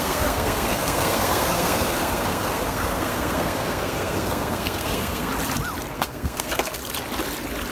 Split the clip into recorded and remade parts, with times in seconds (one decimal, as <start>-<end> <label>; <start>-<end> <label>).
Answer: 0.0-5.3 remade; 5.3-5.9 recorded; 5.9-6.8 remade; 6.8-7.7 recorded